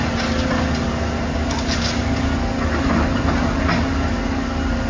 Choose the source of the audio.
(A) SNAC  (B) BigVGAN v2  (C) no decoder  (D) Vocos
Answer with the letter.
C